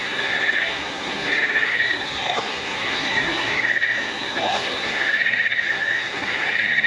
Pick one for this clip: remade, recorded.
remade